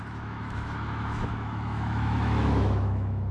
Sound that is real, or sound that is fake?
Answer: fake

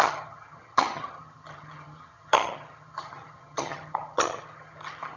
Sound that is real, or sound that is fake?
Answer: fake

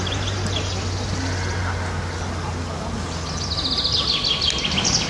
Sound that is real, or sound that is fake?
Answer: real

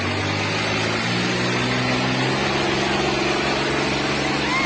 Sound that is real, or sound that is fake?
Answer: real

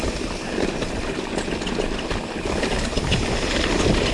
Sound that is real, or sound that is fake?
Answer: real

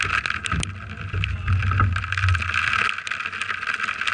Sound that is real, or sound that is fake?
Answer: real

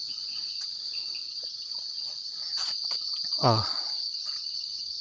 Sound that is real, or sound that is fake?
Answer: fake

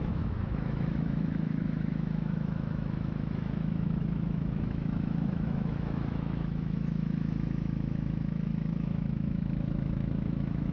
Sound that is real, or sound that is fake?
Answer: fake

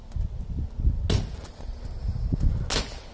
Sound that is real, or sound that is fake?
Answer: real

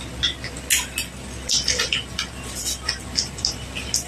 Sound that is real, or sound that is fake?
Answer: real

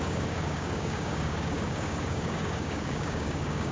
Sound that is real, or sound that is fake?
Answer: fake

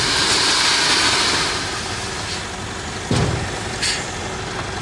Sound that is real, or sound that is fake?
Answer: real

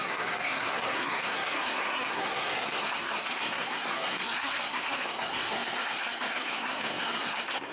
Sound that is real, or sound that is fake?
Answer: fake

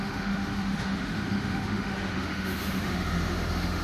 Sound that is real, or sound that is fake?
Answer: fake